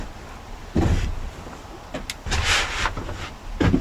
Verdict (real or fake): real